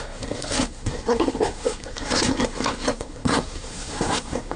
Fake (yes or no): yes